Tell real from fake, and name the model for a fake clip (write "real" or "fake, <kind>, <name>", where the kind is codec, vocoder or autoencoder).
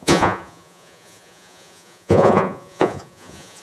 fake, vocoder, Vocos